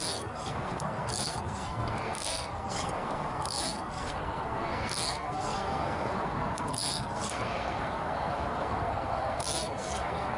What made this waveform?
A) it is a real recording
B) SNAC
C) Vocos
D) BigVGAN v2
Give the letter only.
B